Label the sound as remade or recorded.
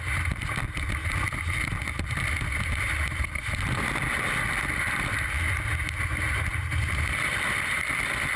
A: recorded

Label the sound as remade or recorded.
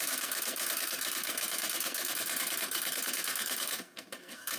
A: remade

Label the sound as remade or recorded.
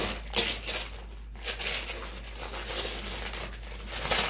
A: recorded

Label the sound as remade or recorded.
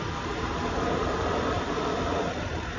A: recorded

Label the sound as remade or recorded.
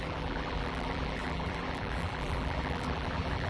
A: remade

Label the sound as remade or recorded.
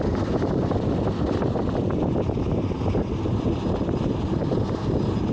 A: recorded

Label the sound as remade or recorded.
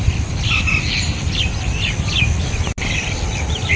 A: recorded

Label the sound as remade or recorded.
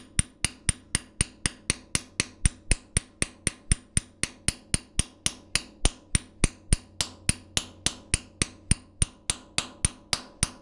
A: recorded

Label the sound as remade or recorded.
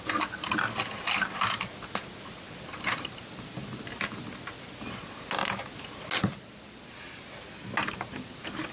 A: recorded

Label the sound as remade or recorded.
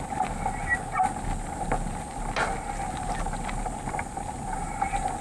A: recorded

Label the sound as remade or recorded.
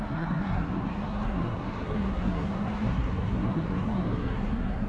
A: remade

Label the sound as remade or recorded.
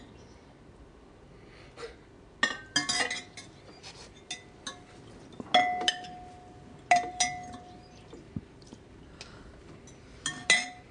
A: recorded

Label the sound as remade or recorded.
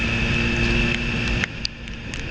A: recorded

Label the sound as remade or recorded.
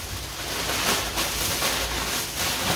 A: recorded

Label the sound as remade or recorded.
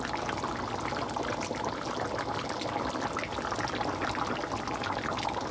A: recorded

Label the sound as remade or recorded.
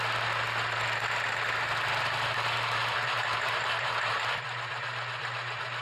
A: recorded